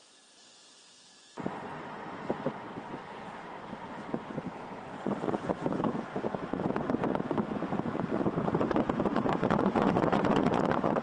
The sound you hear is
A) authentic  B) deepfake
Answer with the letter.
B